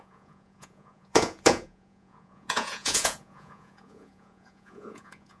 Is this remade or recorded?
remade